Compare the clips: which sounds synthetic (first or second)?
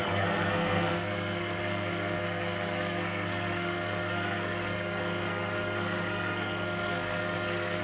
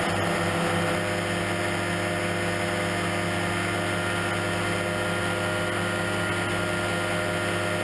first